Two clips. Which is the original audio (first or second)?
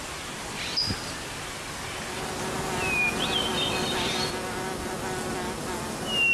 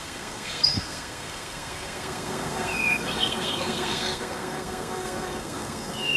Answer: first